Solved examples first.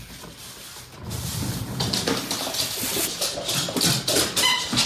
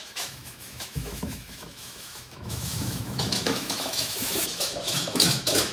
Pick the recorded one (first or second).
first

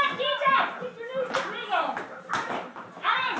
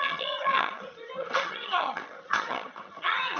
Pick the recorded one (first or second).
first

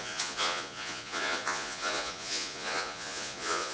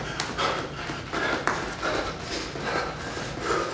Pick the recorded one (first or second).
second